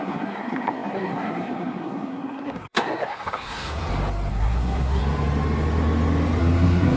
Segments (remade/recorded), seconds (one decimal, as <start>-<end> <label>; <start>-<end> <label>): 0.0-3.8 remade; 3.8-4.3 recorded; 4.3-5.0 remade; 5.0-6.4 recorded; 6.4-7.0 remade